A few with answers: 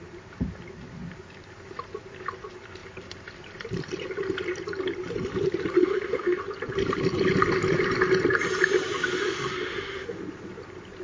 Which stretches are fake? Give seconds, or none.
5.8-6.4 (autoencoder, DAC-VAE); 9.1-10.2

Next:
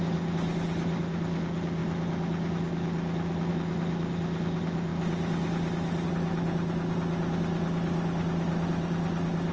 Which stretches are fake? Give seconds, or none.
none

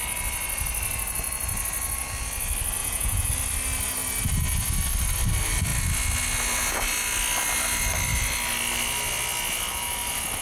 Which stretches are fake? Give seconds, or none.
2.8-3.3 (vocoder, Vocos)

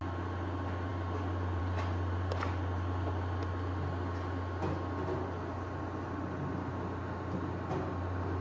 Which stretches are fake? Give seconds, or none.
none

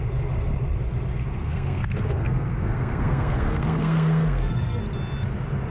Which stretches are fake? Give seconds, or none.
1.4-4.8 (codec, SNAC)